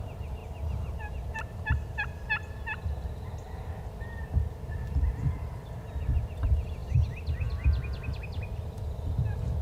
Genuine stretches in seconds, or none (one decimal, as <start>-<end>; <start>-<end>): 0.0-9.6